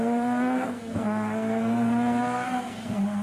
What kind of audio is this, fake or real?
fake